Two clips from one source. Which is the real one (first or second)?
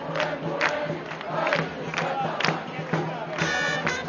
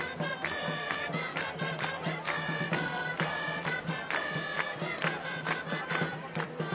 first